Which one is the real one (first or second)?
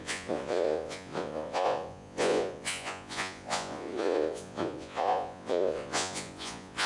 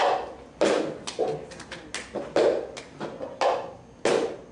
second